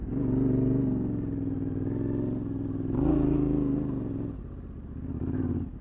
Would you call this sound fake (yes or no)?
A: no